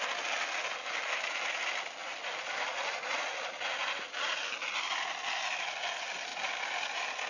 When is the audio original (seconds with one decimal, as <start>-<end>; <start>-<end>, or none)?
0.0-7.3